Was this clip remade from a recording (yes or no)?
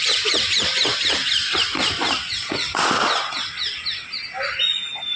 no